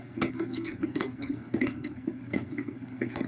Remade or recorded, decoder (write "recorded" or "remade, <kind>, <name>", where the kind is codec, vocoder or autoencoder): remade, codec, SNAC